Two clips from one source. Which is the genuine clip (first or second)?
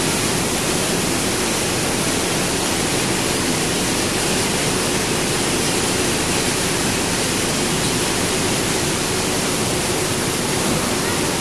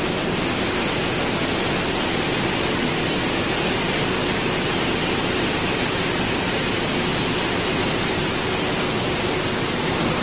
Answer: second